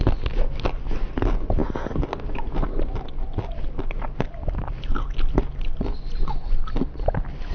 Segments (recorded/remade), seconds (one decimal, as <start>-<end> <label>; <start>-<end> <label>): 0.0-7.5 recorded